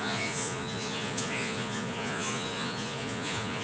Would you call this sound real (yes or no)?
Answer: no